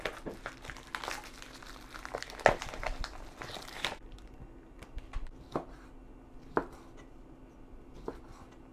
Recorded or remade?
recorded